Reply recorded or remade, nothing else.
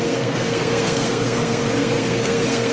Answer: remade